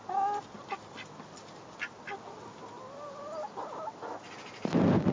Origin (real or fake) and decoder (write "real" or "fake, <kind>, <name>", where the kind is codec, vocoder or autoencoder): real